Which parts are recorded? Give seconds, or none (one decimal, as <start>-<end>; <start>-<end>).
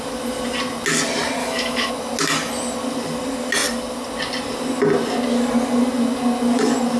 0.0-1.4; 1.9-7.0